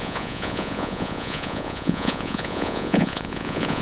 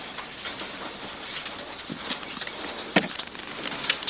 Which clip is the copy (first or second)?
first